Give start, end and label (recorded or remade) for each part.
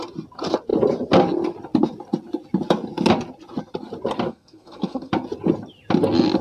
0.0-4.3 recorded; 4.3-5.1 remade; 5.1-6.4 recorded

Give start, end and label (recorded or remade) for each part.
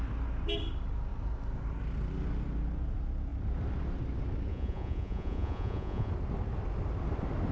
0.0-4.5 recorded; 4.5-6.1 remade; 6.1-7.5 recorded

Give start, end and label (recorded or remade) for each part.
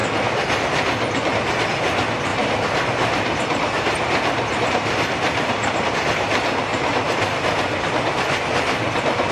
0.0-2.3 recorded; 2.3-5.9 remade; 5.9-6.7 recorded; 6.7-7.8 remade; 7.8-9.3 recorded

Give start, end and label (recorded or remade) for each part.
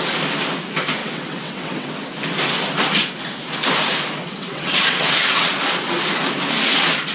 0.0-1.0 recorded; 1.0-1.9 remade; 1.9-4.2 recorded; 4.2-5.5 remade; 5.5-7.1 recorded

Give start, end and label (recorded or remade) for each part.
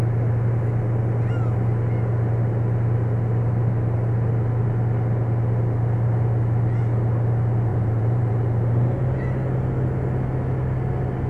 0.0-7.7 recorded; 7.7-8.3 remade; 8.3-11.3 recorded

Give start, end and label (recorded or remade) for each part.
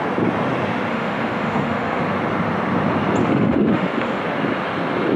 0.0-0.9 recorded; 0.9-2.0 remade; 2.0-3.2 recorded; 3.2-4.2 remade; 4.2-5.2 recorded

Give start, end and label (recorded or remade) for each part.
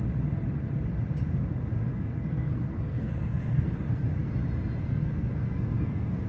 0.0-1.9 recorded; 1.9-4.3 remade; 4.3-4.8 recorded; 4.8-6.3 remade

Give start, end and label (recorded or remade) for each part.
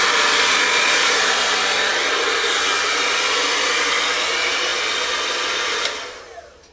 0.0-6.7 recorded